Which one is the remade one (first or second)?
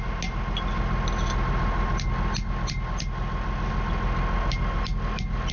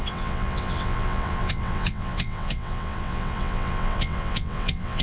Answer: second